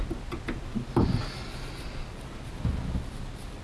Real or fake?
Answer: real